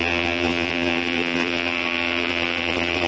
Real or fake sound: fake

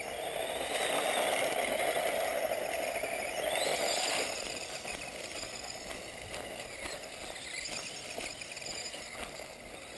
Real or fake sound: real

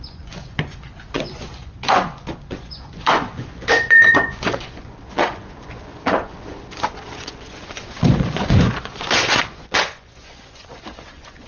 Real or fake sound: fake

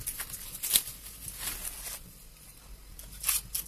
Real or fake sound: real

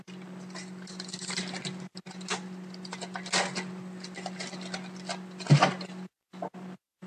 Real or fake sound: real